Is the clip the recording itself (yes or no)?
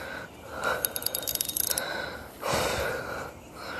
yes